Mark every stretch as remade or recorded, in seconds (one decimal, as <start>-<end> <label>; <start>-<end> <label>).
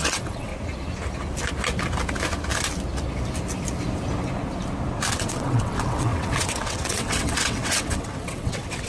0.0-0.5 remade; 0.5-5.2 recorded; 5.2-8.9 remade